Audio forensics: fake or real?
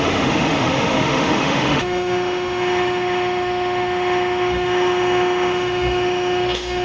fake